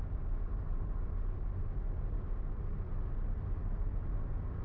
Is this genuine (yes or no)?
yes